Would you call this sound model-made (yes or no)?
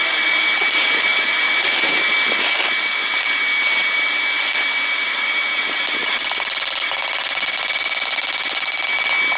no